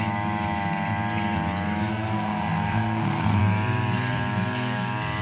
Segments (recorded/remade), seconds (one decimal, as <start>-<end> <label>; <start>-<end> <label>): 0.0-1.9 recorded; 1.9-3.4 remade; 3.4-5.2 recorded